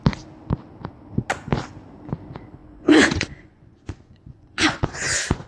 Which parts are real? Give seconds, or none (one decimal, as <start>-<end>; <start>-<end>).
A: 0.0-2.6